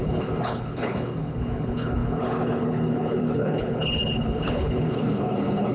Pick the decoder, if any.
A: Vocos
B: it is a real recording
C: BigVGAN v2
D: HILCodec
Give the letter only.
D